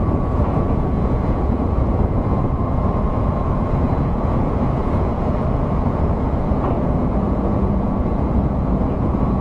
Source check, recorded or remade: remade